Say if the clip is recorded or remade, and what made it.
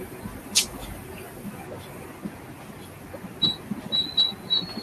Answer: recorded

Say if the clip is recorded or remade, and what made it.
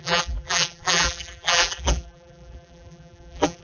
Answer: remade, vocoder, BigVGAN v2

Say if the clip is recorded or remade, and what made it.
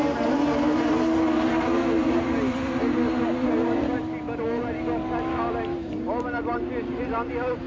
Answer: recorded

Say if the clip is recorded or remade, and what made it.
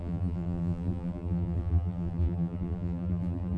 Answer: remade, vocoder, BigVGAN v2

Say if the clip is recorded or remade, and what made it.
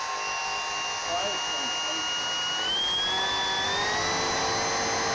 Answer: recorded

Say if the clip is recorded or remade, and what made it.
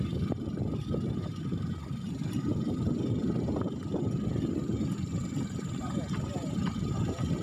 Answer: remade, vocoder, BigVGAN v2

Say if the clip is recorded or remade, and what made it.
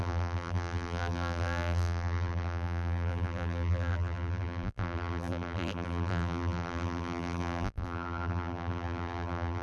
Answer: remade, vocoder, BigVGAN v2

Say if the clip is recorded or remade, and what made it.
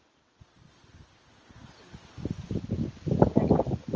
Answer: recorded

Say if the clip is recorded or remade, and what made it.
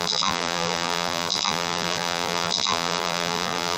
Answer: remade, vocoder, BigVGAN v2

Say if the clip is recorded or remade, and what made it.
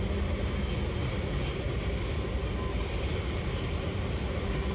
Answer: recorded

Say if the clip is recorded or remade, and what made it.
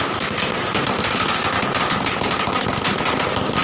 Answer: recorded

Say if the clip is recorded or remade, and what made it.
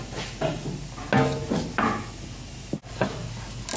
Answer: recorded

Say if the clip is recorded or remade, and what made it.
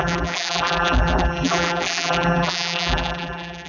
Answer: remade, vocoder, BigVGAN v2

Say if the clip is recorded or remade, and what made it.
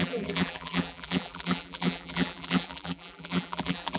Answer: remade, vocoder, BigVGAN v2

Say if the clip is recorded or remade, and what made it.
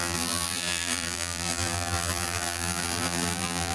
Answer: remade, vocoder, BigVGAN v2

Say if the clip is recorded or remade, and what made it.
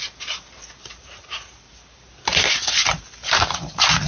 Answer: remade, vocoder, BigVGAN v2